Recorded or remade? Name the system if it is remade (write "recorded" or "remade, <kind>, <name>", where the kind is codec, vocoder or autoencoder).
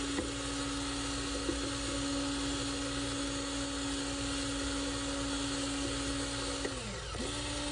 recorded